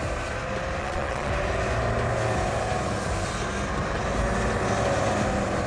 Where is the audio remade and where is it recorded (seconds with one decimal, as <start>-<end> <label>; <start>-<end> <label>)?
0.0-0.8 recorded; 0.8-1.3 remade; 1.3-5.7 recorded